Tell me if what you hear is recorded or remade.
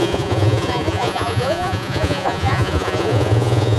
remade